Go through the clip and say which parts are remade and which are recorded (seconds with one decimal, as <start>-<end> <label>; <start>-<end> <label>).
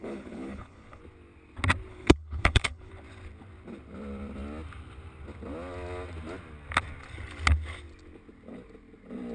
0.0-1.0 remade; 1.0-1.9 recorded; 1.9-2.9 remade; 2.9-9.3 recorded